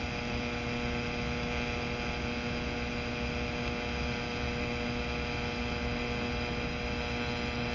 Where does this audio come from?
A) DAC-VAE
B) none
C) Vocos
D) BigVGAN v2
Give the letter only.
B